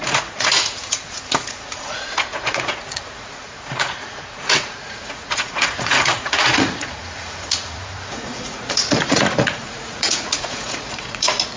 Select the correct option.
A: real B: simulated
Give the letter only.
B